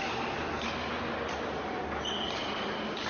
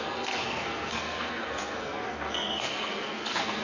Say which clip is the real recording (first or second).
first